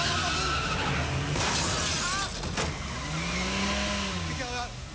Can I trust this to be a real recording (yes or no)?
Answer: yes